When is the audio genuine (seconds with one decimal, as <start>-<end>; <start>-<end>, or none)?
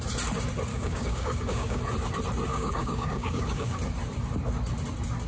0.0-0.7; 1.8-2.5; 3.8-5.3